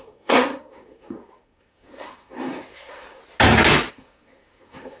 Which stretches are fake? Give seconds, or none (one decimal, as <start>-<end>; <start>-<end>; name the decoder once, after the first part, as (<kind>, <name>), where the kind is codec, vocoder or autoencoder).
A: 0.0-3.2 (codec, SNAC); 3.9-5.0